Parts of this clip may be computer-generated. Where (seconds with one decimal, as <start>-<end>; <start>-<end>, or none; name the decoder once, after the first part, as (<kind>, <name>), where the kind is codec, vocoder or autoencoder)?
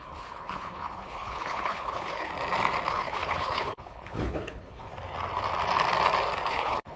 0.0-2.3 (codec, HILCodec); 2.9-4.9; 6.5-7.0